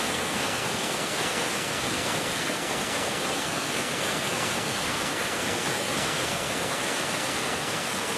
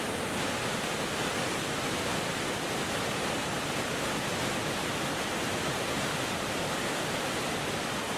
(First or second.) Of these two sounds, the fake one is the first